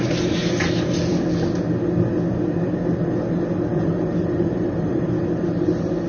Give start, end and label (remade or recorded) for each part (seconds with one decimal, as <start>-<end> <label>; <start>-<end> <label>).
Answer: 0.0-0.4 remade; 0.4-3.7 recorded; 3.7-6.1 remade